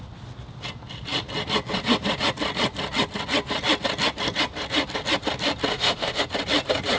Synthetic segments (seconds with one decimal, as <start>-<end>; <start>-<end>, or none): 5.7-6.2